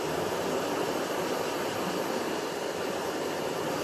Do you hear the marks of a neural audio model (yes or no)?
no